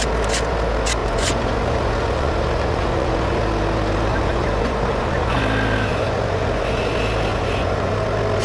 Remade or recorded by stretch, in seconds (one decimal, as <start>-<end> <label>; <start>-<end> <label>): 0.0-1.0 recorded; 1.0-3.4 remade; 3.4-4.1 recorded; 4.1-5.4 remade; 5.4-5.9 recorded; 5.9-6.8 remade; 6.8-7.3 recorded; 7.3-7.9 remade; 7.9-8.4 recorded

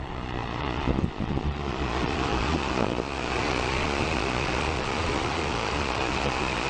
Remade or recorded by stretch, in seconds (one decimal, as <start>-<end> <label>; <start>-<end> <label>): 0.0-6.7 remade

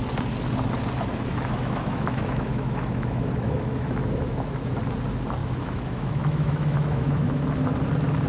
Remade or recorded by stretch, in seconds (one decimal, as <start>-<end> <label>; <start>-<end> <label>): 0.0-1.3 recorded; 1.3-4.8 remade; 4.8-5.4 recorded; 5.4-7.4 remade; 7.4-8.3 recorded

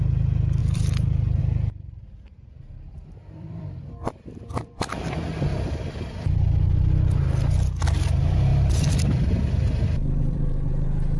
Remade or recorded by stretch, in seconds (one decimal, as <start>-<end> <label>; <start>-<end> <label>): 0.0-0.6 recorded; 0.6-1.4 remade; 1.4-3.2 recorded; 3.2-4.9 remade; 4.9-5.5 recorded; 5.5-6.5 remade; 6.5-8.5 recorded; 8.5-11.2 remade

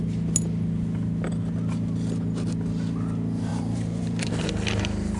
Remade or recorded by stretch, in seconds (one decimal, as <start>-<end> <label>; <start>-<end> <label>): 0.0-3.5 recorded; 3.5-4.3 remade; 4.3-5.2 recorded

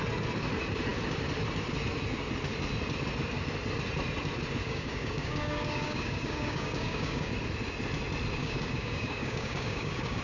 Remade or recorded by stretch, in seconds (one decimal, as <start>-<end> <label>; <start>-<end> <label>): 0.0-4.6 recorded; 4.6-7.3 remade; 7.3-8.4 recorded; 8.4-10.2 remade

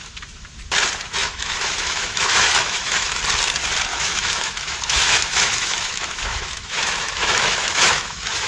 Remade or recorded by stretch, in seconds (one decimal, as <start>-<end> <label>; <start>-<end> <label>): 0.0-1.2 recorded; 1.2-3.2 remade; 3.2-3.9 recorded; 3.9-8.5 remade